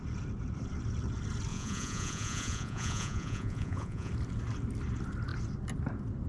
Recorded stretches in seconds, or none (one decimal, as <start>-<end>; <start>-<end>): 0.0-1.5; 4.1-6.3